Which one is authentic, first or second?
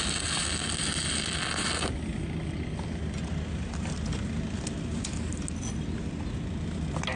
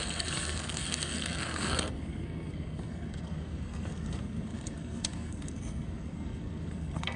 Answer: first